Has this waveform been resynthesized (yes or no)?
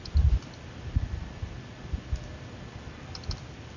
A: no